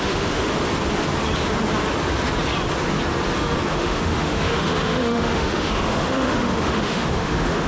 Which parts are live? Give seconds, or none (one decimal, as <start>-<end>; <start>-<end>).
0.5-3.7